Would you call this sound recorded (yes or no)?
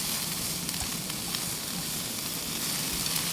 yes